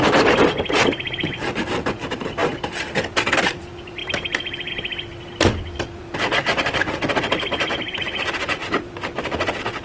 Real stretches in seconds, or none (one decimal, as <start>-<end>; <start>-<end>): 0.0-9.8